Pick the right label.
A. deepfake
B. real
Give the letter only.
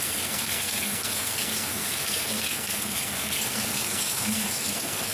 A